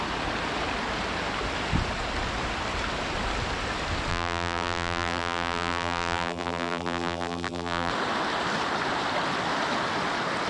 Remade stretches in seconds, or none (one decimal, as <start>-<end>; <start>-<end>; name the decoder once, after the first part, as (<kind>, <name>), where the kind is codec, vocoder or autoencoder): 4.1-7.9 (vocoder, BigVGAN v2)